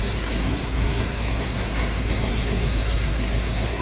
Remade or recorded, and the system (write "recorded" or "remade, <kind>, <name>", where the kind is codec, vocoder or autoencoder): remade, codec, SNAC